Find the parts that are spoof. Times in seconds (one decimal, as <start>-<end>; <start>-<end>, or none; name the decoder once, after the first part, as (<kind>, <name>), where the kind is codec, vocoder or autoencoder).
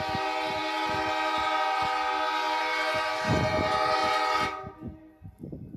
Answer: none